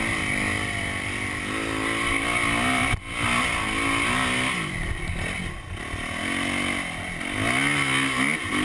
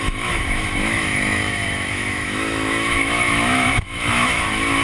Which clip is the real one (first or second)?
first